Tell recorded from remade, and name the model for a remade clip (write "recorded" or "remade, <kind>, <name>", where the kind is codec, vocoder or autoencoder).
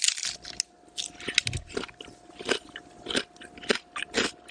recorded